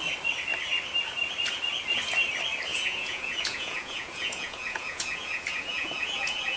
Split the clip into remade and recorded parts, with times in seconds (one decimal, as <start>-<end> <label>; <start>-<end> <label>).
0.0-2.7 recorded; 2.7-6.6 remade